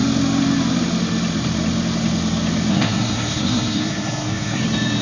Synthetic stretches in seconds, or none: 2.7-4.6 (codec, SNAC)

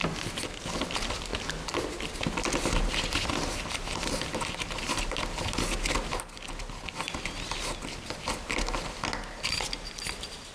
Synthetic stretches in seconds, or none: none

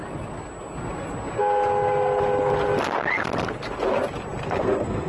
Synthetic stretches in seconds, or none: 4.4-5.1 (codec, SNAC)

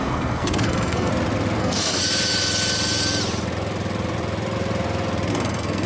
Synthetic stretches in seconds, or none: 0.0-1.1 (codec, SNAC); 1.6-2.0; 5.3-5.9